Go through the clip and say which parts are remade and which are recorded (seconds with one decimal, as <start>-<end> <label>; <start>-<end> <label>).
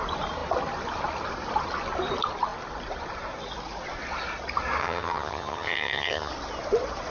0.0-4.8 recorded; 4.8-6.3 remade; 6.3-7.1 recorded